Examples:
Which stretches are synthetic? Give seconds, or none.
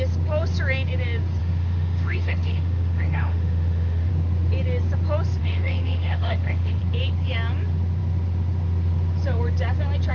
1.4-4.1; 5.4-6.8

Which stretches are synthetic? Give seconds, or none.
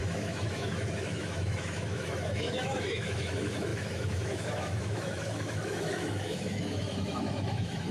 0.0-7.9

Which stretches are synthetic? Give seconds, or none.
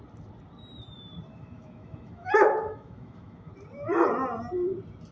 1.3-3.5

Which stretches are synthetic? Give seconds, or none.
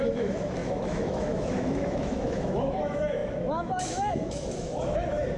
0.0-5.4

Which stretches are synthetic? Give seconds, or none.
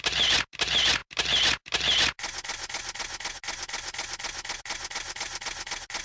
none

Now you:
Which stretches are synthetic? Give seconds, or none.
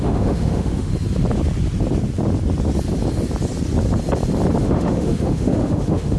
0.0-0.9; 4.6-6.2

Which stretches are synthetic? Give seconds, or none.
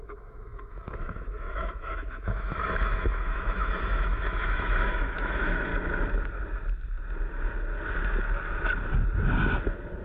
0.0-5.7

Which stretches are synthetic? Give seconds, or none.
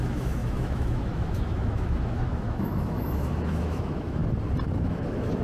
0.0-4.2; 4.8-5.4